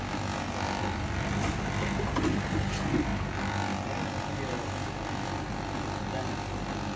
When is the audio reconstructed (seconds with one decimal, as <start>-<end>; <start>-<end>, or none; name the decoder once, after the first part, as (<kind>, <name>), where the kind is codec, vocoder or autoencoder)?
none